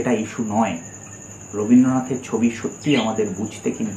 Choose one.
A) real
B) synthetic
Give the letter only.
A